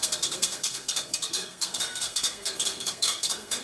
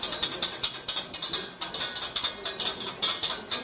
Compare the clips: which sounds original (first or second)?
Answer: second